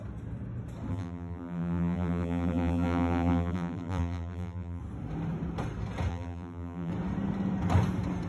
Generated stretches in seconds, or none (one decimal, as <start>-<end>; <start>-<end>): 0.9-4.8; 6.1-6.9